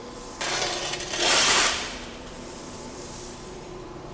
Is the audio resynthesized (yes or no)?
yes